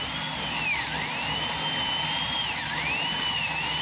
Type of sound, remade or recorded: recorded